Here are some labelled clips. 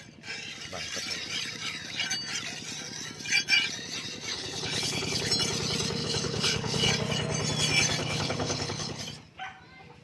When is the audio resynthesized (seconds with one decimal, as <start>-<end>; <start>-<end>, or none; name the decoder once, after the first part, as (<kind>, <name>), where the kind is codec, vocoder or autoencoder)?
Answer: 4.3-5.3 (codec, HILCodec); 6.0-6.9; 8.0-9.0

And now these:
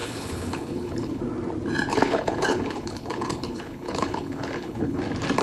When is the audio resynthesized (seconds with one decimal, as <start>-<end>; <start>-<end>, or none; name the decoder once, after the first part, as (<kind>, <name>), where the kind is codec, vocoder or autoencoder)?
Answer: 0.0-1.2 (codec, HILCodec); 1.9-5.0

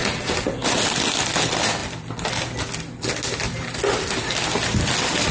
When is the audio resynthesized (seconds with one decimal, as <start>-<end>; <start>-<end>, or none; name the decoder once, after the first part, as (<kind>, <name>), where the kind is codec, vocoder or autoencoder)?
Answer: none

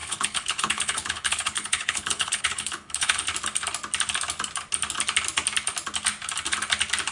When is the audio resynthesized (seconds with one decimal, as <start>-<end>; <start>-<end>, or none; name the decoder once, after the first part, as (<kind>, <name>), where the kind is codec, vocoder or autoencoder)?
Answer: 0.0-3.3 (codec, HILCodec)

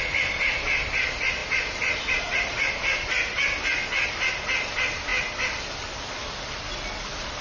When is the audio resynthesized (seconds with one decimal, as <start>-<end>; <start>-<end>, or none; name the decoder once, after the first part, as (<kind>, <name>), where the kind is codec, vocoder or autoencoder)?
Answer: none

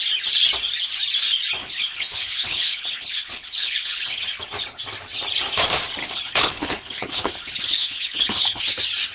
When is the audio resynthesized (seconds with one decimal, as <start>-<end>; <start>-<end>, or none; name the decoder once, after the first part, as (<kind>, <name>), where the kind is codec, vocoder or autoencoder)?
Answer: 1.6-4.2 (codec, HILCodec); 6.0-8.6

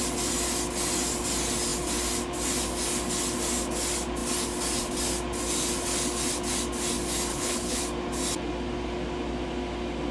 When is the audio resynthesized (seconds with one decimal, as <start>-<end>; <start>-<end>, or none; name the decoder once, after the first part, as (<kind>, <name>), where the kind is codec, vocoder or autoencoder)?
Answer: 7.3-7.8 (codec, HILCodec)